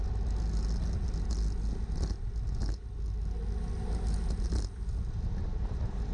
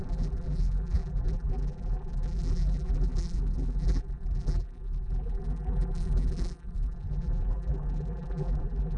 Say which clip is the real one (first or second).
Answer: first